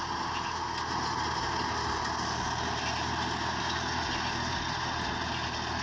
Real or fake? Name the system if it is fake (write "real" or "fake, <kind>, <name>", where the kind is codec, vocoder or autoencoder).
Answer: real